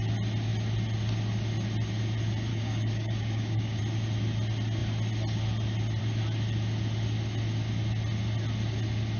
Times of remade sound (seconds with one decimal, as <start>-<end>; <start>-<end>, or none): 2.5-3.8